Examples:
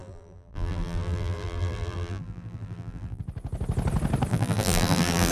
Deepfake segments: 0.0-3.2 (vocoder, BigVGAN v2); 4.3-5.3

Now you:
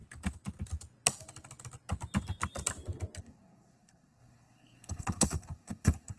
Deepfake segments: 3.2-6.2 (codec, SNAC)

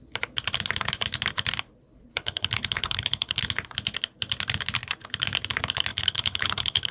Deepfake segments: 2.1-3.4 (codec, HILCodec); 5.9-6.9

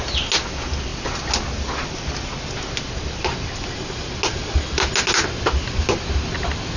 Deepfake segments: none